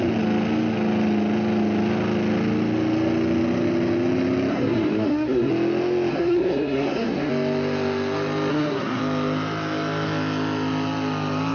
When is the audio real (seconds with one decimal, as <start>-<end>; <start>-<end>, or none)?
0.0-4.5; 5.5-6.1; 7.3-8.5; 9.0-11.5